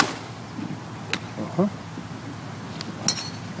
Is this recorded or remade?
recorded